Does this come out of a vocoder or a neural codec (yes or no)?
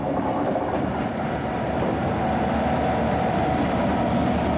no